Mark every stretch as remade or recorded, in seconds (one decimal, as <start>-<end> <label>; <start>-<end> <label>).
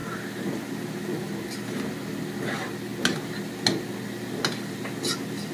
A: 0.0-5.5 recorded